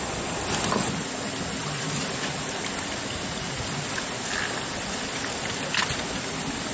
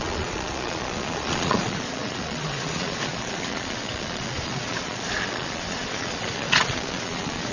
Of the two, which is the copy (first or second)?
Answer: second